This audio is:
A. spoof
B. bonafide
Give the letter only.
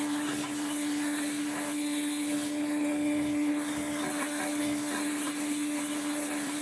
A